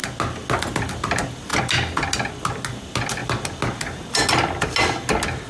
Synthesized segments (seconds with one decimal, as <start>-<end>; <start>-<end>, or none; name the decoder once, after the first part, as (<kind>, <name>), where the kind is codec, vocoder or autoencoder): none